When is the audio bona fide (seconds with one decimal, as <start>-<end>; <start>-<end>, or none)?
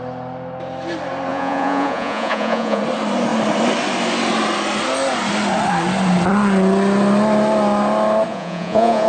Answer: 0.0-1.3; 2.8-8.3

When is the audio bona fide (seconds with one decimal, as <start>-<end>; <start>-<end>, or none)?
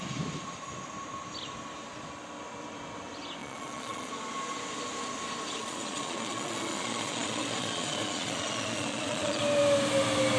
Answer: 0.0-3.4; 4.1-5.6; 9.4-10.4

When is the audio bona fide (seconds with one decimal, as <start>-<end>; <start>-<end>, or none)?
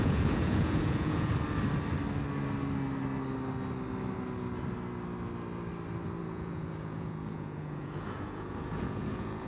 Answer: 1.3-6.2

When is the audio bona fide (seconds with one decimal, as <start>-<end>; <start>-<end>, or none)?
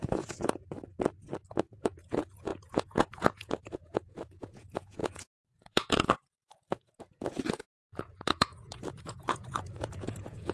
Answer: 0.6-1.5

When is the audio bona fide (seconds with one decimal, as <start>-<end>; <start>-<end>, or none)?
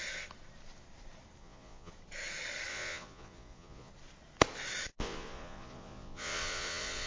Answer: 0.0-1.4; 1.9-2.7; 3.9-4.9